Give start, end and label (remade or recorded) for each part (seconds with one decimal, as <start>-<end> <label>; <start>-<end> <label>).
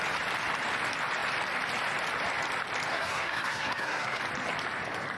0.0-2.9 recorded; 2.9-4.2 remade; 4.2-5.2 recorded